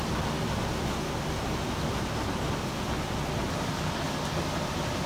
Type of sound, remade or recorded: recorded